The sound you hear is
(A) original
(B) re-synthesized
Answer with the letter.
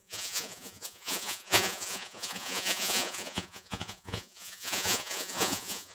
B